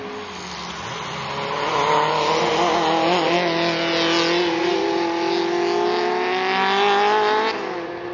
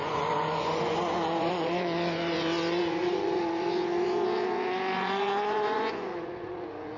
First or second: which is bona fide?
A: first